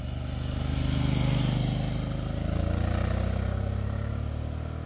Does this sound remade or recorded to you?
recorded